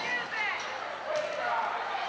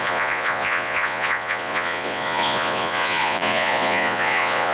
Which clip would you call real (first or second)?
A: first